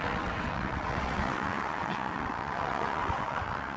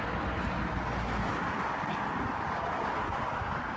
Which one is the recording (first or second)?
second